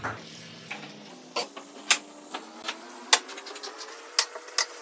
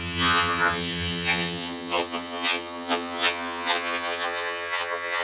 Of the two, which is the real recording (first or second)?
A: first